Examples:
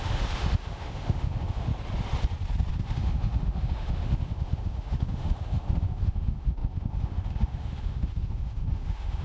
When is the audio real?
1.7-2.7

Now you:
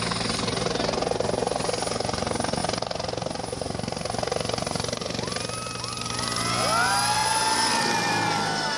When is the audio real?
0.0-8.8